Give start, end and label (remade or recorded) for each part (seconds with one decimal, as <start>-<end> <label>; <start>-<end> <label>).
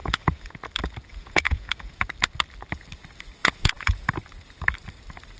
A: 0.0-0.5 remade; 0.5-1.1 recorded; 1.1-2.0 remade; 2.0-3.4 recorded; 3.4-4.1 remade; 4.1-5.4 recorded